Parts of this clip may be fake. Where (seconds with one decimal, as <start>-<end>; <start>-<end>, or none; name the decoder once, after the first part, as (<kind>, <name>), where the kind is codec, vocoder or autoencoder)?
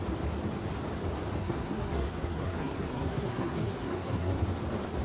1.4-4.4 (codec, SNAC)